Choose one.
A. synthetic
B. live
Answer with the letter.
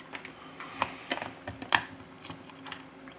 B